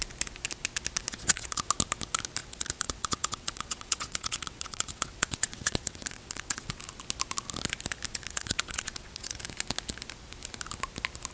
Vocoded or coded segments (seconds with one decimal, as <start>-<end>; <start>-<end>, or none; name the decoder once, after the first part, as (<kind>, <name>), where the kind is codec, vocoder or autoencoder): 1.0-1.7 (vocoder, WaveNeXt); 2.4-6.7; 8.1-9.4